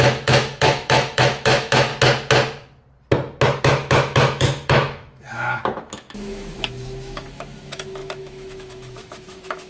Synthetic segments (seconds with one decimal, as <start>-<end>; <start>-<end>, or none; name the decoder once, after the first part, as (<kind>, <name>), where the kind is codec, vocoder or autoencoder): 0.0-1.9 (autoencoder, DAC-VAE); 3.6-9.7